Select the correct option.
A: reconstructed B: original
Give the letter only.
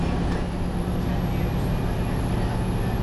B